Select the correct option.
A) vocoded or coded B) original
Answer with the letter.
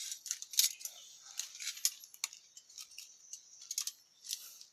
B